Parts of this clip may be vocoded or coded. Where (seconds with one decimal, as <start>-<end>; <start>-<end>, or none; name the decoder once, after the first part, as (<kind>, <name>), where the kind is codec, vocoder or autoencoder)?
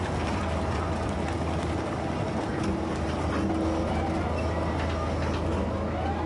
2.5-3.3 (vocoder, BigVGAN v2)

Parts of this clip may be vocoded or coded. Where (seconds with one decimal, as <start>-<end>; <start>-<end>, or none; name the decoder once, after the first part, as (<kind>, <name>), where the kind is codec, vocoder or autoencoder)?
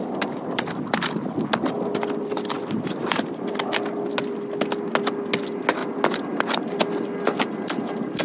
none